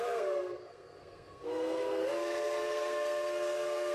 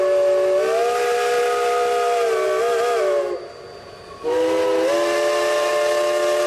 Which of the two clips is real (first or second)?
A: second